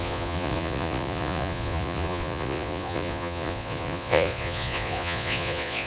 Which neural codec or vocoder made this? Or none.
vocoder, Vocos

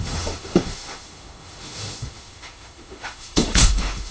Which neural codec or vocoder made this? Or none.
autoencoder, DAC-VAE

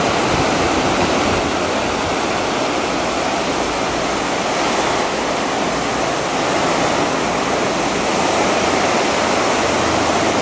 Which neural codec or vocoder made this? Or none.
none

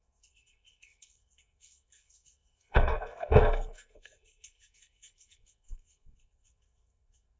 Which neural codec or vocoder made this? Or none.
codec, SNAC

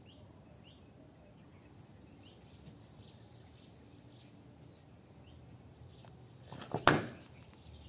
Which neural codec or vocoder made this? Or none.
none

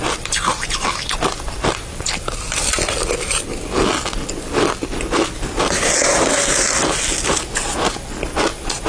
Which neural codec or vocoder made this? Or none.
none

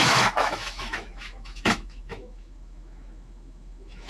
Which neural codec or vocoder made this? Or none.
autoencoder, DAC-VAE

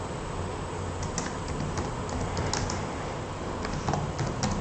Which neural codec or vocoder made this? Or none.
none